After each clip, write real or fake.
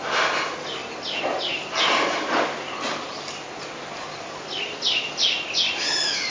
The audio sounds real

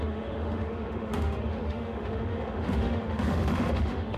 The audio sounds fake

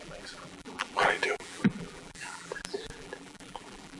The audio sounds fake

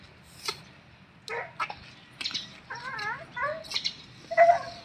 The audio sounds real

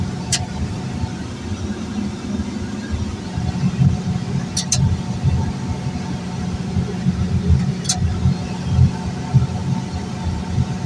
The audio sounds real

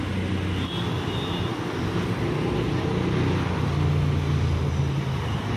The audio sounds real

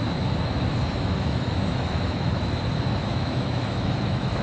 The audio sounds fake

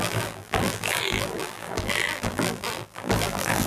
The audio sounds fake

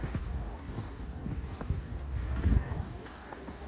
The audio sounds fake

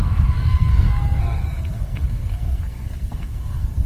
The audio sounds fake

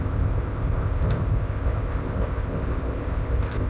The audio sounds fake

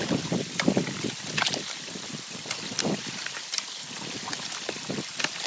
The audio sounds real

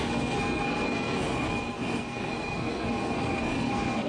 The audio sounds fake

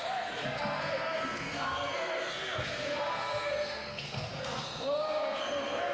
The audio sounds fake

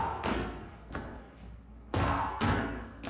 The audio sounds fake